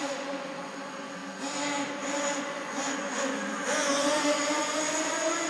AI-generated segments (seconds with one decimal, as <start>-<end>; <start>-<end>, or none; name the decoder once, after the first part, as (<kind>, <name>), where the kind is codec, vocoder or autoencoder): 0.0-1.2 (vocoder, Vocos); 1.9-5.5